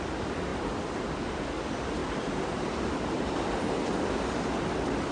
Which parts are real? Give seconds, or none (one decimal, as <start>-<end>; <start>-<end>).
0.0-2.0; 4.2-5.1